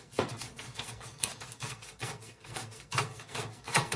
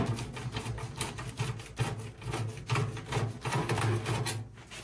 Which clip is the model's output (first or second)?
first